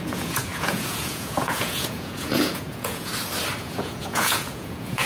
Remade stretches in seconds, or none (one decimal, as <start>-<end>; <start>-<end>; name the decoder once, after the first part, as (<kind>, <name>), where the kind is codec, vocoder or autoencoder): 0.0-3.1 (vocoder, Vocos); 3.6-5.1